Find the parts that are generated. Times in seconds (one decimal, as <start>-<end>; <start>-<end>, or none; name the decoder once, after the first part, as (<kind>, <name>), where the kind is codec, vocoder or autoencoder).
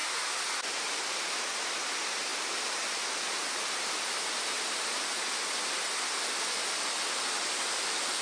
none